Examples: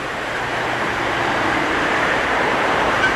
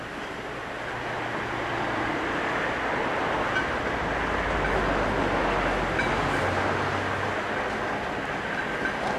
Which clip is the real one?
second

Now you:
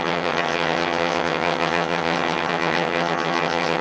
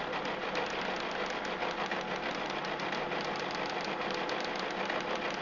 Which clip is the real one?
second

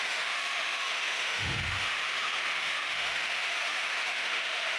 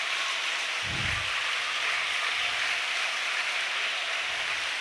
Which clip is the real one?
second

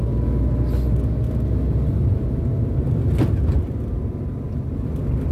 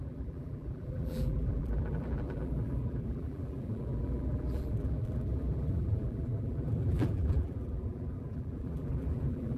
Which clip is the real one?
first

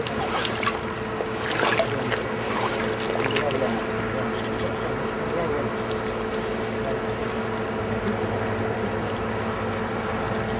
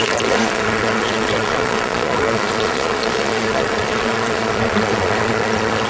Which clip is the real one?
first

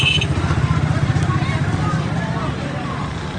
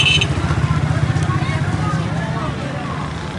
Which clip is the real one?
second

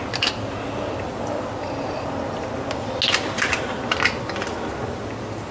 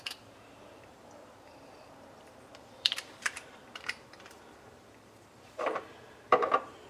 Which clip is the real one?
first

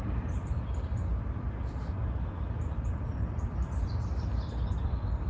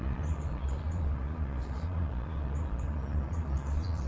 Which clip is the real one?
first